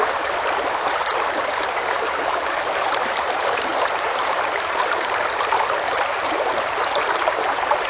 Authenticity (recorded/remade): remade